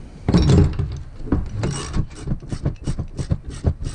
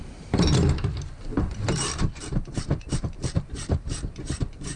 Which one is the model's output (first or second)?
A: second